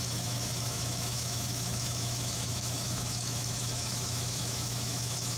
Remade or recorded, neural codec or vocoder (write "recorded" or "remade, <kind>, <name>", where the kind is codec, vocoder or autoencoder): remade, autoencoder, DAC-VAE